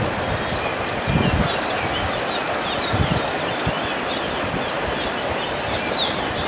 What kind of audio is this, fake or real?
real